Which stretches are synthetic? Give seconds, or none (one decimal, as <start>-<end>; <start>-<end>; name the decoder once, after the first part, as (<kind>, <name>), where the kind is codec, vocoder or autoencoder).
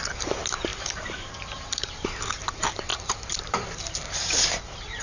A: 0.7-2.2 (vocoder, BigVGAN v2); 2.9-4.2